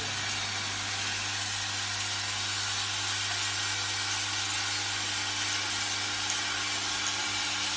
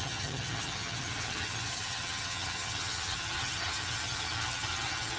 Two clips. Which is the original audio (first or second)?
first